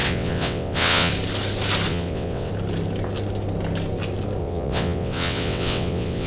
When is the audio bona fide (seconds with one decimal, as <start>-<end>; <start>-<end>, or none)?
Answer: 1.1-1.9; 2.5-4.4